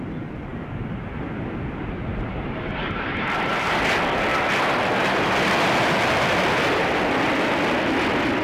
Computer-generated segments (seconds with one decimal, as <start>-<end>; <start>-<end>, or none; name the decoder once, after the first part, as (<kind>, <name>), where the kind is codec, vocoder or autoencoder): 2.1-3.7 (vocoder, BigVGAN v2)